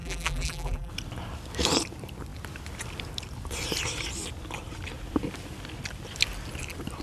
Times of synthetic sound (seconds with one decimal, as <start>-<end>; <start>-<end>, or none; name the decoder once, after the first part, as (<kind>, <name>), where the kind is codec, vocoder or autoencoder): 0.0-0.9 (vocoder, BigVGAN v2)